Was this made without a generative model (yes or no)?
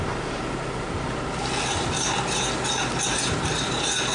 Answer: yes